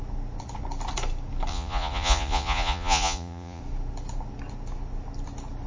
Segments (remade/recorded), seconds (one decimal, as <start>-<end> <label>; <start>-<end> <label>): 0.0-1.5 recorded; 1.5-3.6 remade; 3.6-5.7 recorded

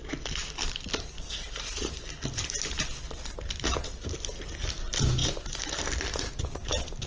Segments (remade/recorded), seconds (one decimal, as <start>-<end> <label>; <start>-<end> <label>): 0.0-7.1 recorded

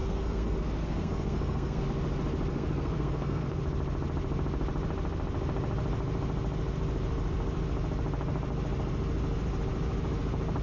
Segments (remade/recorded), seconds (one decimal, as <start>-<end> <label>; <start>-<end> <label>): 0.0-1.8 remade; 1.8-2.5 recorded; 2.5-3.6 remade; 3.6-10.6 recorded

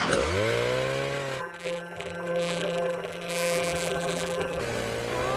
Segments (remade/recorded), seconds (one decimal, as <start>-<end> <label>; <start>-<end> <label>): 0.0-1.4 recorded; 1.4-4.6 remade; 4.6-5.4 recorded

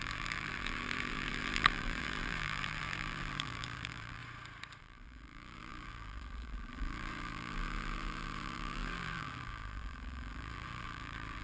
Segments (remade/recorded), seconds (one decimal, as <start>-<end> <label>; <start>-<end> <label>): 0.0-4.2 remade; 4.2-4.8 recorded; 4.8-11.4 remade